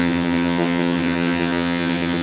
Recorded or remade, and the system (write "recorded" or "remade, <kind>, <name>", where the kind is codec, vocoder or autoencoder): remade, vocoder, HiFi-GAN